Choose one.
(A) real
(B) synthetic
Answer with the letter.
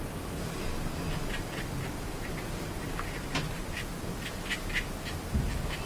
A